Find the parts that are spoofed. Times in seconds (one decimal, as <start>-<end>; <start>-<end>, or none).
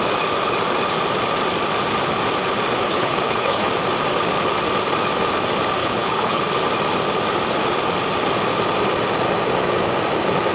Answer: 2.8-3.7; 5.8-6.4